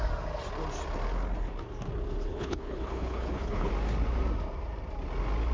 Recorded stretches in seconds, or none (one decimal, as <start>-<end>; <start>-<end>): 0.0-2.3; 3.7-5.5